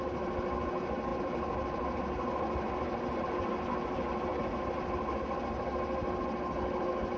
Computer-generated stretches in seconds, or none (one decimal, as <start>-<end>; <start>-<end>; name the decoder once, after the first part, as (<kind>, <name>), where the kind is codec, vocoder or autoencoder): none